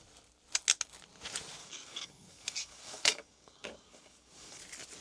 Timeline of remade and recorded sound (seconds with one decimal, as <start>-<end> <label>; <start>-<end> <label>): 0.0-1.6 recorded; 1.6-4.6 remade; 4.6-5.0 recorded